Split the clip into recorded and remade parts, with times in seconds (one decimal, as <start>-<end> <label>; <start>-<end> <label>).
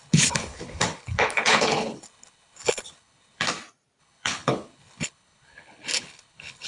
0.0-3.5 remade; 3.5-4.0 recorded; 4.0-6.7 remade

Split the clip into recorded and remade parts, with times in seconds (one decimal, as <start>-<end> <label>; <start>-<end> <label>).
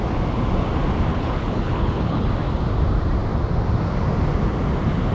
0.0-1.1 recorded; 1.1-2.3 remade; 2.3-5.1 recorded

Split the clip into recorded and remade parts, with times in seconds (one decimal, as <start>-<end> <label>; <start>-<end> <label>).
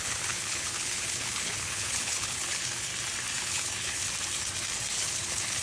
0.0-2.9 remade; 2.9-3.4 recorded; 3.4-4.0 remade; 4.0-4.9 recorded; 4.9-5.6 remade